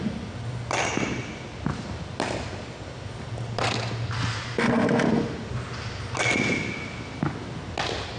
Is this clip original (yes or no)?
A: yes